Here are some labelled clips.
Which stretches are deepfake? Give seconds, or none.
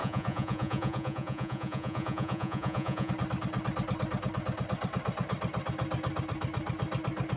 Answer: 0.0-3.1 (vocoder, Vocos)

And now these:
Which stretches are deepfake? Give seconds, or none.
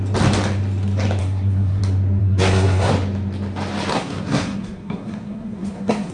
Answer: 1.2-1.8 (codec, SNAC); 2.2-2.9; 3.9-6.1